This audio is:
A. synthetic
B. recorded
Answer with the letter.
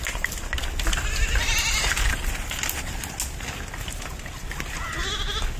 B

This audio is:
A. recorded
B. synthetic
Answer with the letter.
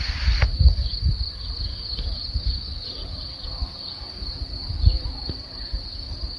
A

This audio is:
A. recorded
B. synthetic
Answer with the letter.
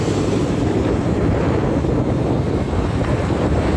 B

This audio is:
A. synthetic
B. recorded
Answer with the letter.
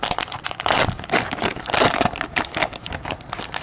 A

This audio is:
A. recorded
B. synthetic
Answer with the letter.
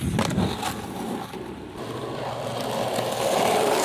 A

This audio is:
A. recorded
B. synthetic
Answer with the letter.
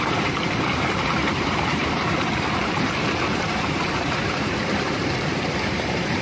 B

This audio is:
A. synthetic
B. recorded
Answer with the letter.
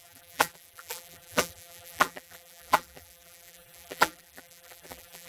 A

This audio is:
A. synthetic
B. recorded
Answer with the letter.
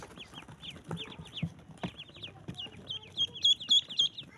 B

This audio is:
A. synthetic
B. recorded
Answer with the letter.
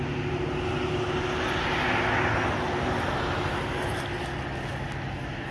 B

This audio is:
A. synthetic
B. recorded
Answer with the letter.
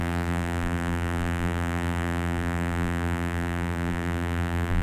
A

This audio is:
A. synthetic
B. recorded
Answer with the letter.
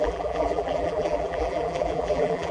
A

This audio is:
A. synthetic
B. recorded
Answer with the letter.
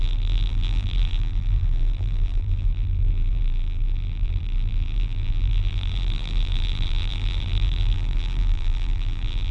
A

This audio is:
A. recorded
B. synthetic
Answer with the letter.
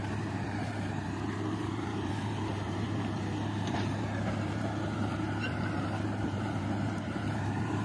B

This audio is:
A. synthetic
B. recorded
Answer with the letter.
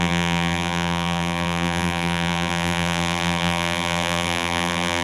A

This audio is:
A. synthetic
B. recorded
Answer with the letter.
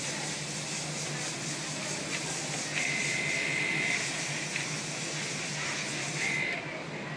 B